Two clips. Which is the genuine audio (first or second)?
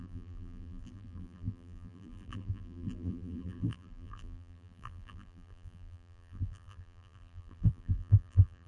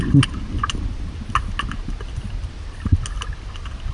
second